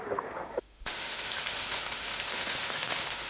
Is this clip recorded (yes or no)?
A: no